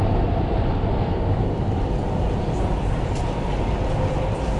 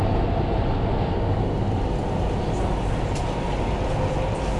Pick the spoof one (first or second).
first